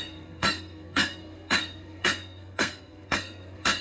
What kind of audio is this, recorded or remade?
remade